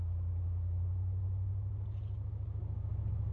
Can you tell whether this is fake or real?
real